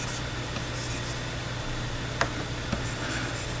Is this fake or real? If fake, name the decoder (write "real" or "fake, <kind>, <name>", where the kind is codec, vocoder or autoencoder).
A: real